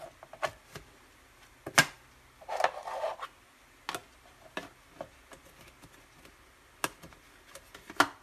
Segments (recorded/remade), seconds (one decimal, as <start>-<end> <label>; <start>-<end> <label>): 0.0-8.2 recorded